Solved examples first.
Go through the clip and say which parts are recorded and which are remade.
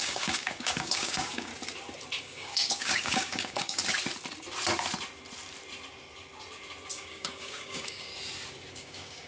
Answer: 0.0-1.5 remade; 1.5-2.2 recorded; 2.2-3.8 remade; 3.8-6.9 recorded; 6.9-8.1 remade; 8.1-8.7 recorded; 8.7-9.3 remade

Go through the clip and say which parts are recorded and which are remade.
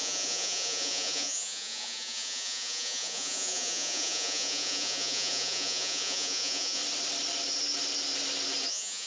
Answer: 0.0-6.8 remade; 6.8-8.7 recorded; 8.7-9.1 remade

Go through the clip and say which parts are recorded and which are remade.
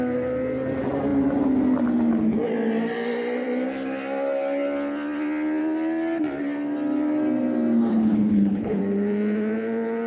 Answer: 0.0-7.9 recorded; 7.9-8.8 remade; 8.8-10.1 recorded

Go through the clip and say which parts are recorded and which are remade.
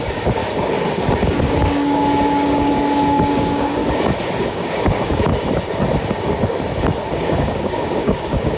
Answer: 0.0-0.4 remade; 0.4-1.1 recorded; 1.1-3.8 remade; 3.8-4.5 recorded; 4.5-5.3 remade; 5.3-7.1 recorded; 7.1-8.6 remade